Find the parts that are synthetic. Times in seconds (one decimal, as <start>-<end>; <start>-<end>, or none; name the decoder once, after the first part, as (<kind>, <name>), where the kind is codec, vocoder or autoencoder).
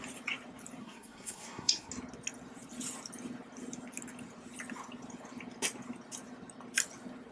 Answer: 0.8-1.9 (codec, SNAC)